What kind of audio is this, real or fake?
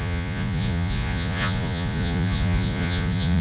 fake